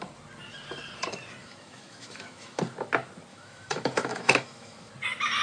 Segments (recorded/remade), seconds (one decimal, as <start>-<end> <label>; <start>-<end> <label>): 0.0-1.4 recorded; 1.4-2.6 remade; 2.6-3.3 recorded; 3.3-4.9 remade; 4.9-5.4 recorded